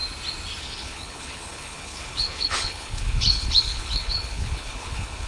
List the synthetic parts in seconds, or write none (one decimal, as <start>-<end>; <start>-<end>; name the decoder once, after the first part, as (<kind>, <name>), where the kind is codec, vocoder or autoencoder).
0.6-5.3 (codec, HILCodec)

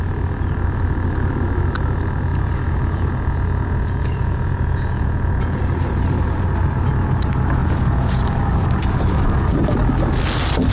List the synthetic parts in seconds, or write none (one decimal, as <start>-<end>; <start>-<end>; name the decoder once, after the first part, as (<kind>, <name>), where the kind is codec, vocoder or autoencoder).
2.3-5.6 (vocoder, Vocos); 7.6-8.2

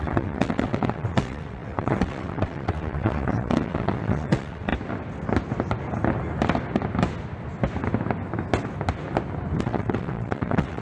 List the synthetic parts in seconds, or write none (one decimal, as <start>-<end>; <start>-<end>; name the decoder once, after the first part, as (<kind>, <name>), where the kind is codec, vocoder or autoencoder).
0.0-4.7 (vocoder, WaveNeXt); 9.6-10.8

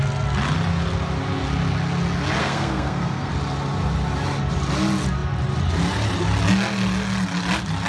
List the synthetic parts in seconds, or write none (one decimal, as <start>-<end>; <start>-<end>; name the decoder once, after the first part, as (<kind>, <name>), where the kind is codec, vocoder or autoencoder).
2.4-3.3 (codec, SNAC)